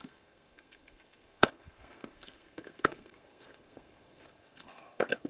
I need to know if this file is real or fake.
fake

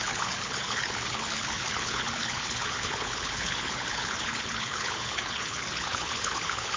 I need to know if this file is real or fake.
fake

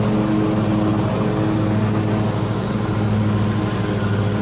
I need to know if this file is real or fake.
real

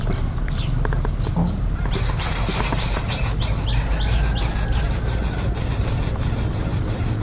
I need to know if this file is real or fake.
real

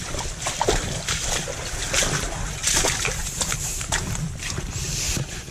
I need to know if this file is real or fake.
real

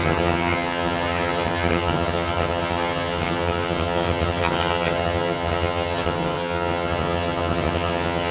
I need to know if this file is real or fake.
fake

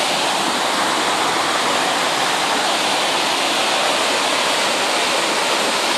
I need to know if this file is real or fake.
real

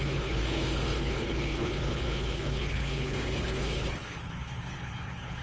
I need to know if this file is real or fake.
fake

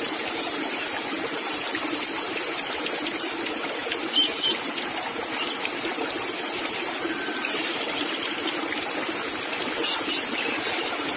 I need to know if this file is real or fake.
real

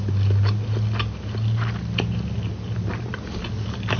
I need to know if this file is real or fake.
real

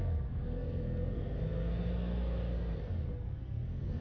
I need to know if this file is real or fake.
fake